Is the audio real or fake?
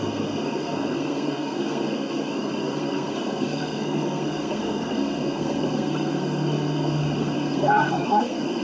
fake